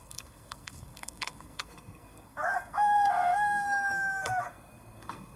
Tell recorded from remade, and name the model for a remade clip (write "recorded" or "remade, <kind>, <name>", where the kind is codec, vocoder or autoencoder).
remade, codec, SNAC